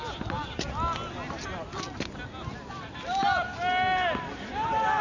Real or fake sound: real